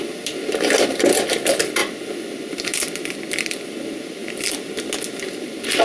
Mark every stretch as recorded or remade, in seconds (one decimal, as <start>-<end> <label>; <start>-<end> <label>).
0.0-5.8 recorded